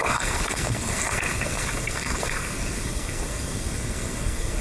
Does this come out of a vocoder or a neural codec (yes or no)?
yes